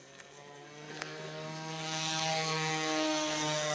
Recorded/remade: remade